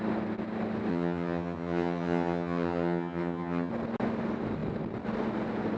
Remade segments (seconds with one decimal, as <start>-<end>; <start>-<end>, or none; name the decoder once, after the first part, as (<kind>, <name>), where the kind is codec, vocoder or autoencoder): 0.9-3.7 (vocoder, HiFi-GAN)